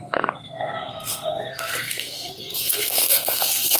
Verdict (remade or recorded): remade